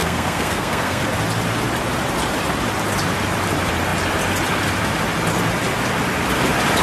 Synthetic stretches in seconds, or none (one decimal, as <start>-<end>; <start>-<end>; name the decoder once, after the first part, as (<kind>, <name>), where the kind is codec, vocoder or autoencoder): 0.0-1.0 (codec, SNAC)